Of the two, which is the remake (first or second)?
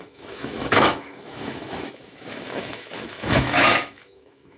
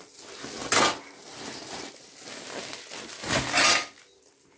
first